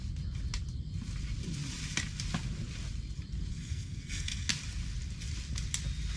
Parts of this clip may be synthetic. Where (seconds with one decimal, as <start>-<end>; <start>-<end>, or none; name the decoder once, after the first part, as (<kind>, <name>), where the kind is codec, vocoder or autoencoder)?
3.5-4.5 (codec, SNAC)